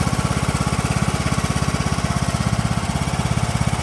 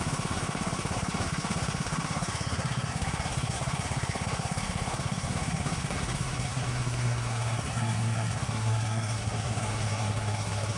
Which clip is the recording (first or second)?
first